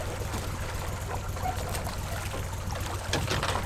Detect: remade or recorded recorded